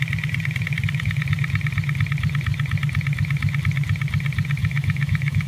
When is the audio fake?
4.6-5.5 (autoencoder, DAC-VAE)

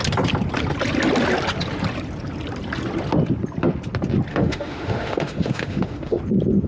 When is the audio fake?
4.3-6.2 (autoencoder, DAC-VAE)

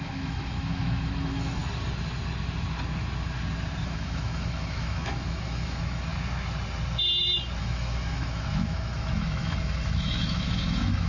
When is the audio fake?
0.0-1.6 (autoencoder, DAC-VAE); 3.8-6.1; 7.6-11.1

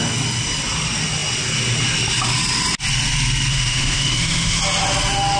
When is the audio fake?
3.5-4.6 (autoencoder, DAC-VAE)

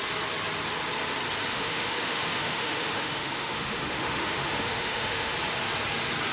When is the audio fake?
1.5-5.3 (autoencoder, DAC-VAE)